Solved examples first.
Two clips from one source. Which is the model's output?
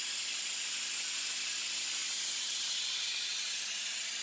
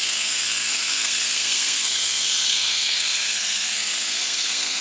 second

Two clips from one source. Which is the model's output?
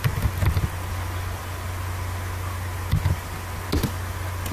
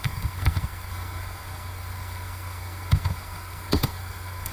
second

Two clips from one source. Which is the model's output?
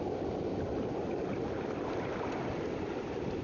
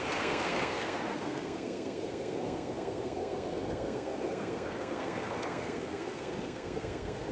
second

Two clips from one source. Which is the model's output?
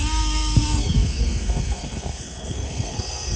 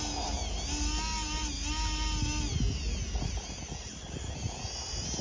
first